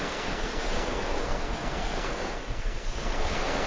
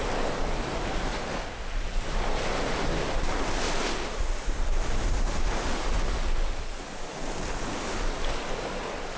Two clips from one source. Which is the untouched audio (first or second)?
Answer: second